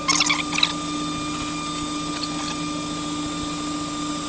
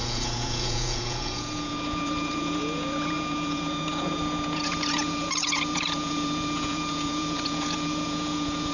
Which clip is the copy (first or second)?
second